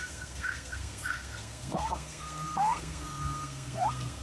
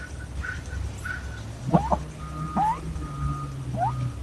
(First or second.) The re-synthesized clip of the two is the first